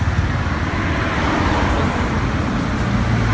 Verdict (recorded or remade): recorded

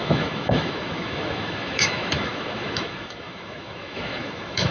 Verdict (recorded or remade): remade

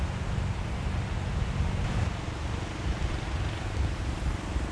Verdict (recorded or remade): recorded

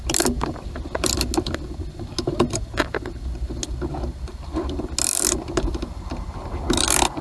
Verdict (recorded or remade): recorded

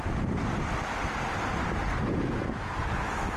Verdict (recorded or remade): recorded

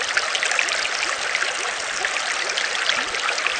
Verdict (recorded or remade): recorded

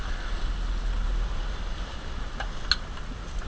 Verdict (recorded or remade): recorded